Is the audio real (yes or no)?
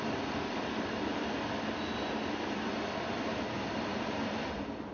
yes